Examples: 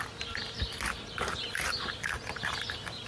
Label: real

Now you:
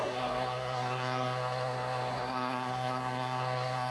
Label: fake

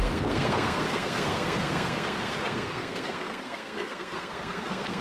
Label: fake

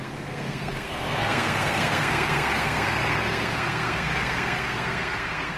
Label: fake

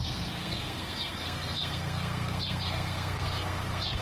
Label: fake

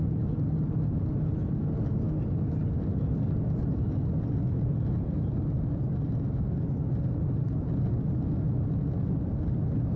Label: real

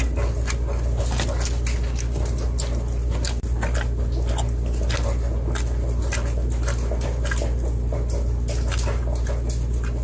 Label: real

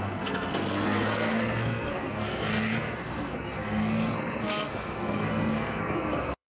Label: fake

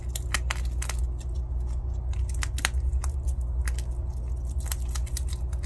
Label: real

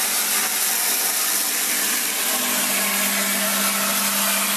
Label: real